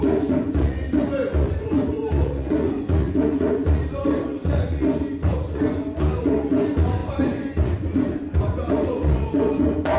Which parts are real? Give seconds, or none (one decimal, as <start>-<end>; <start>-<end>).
none

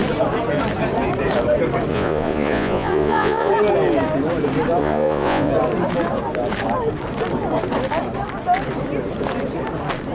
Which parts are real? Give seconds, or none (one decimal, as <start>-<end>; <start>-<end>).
0.0-1.9; 3.5-4.8; 5.5-10.1

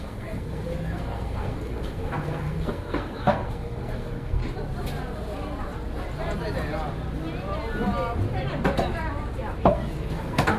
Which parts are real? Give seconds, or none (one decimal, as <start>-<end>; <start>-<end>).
4.4-9.6

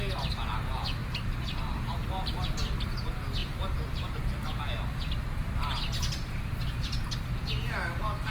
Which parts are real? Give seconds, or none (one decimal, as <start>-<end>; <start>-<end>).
0.0-1.0; 2.3-3.4; 4.1-8.3

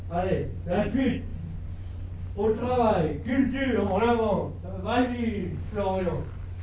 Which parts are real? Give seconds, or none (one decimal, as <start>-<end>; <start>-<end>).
0.0-6.6